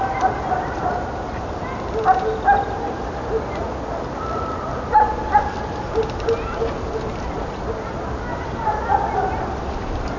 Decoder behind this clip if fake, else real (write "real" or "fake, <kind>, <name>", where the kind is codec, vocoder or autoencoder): real